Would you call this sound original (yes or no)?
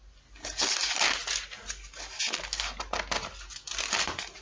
yes